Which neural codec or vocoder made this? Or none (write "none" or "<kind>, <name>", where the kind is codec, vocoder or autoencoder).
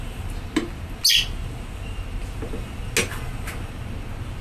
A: none